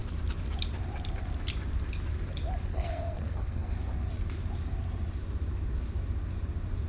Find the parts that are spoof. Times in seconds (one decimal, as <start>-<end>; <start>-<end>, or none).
2.7-3.8